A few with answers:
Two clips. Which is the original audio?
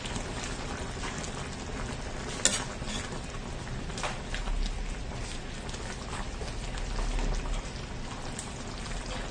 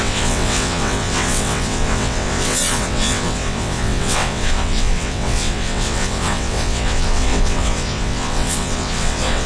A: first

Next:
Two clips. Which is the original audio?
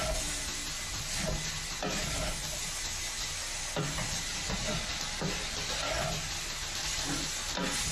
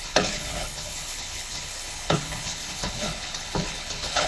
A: first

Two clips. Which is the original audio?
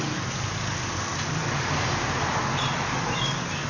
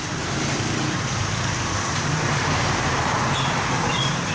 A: first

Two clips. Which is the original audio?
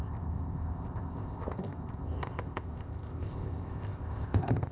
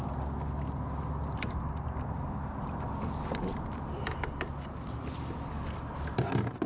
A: second